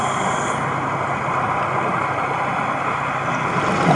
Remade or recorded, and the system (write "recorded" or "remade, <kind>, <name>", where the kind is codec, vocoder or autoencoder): recorded